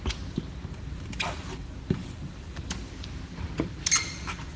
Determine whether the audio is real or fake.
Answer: real